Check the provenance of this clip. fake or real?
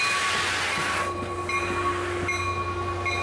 real